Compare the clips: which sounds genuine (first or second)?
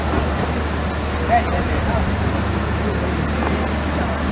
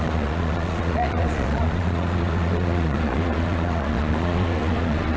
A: first